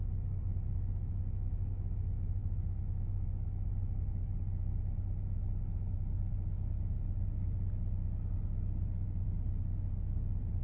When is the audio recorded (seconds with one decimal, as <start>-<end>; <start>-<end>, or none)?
0.0-2.4; 3.7-10.6